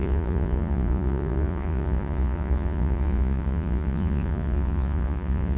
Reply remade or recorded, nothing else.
remade